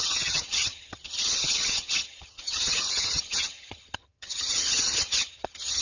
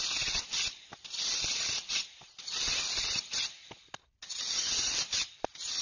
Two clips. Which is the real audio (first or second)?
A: second